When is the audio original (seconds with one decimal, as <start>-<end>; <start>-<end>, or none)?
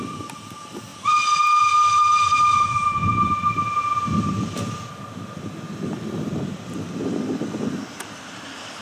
0.9-1.6; 3.0-6.9